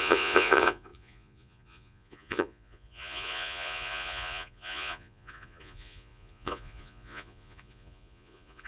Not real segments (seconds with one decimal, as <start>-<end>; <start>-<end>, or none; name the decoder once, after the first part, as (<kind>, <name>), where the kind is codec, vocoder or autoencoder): 0.0-8.7 (vocoder, Vocos)